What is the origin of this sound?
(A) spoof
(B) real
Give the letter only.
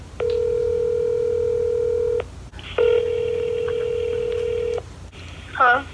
B